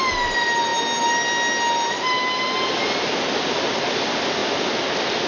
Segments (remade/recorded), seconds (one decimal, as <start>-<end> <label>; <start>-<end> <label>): 0.0-5.3 recorded